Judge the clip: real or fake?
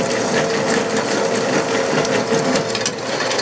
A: real